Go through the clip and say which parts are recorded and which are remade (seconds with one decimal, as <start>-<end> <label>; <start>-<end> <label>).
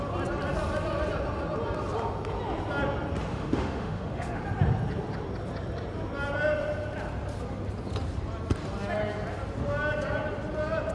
0.0-3.3 recorded; 3.3-4.4 remade; 4.4-10.9 recorded